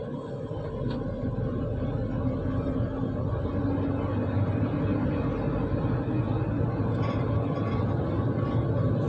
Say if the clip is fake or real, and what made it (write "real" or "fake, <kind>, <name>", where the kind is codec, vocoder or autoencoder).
real